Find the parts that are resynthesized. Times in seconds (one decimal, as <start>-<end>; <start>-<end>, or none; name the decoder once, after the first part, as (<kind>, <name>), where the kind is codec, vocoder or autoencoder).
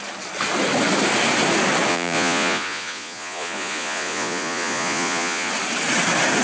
1.9-5.5 (vocoder, Vocos)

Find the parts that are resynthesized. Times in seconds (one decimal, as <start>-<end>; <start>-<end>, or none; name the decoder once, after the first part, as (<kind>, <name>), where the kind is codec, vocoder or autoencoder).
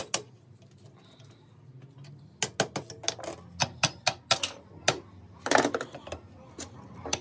none